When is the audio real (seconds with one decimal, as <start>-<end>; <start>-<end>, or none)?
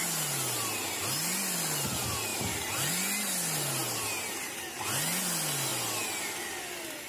0.0-7.1